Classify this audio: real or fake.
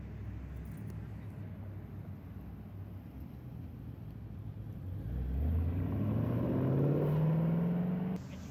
real